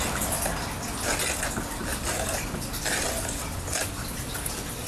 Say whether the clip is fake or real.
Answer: real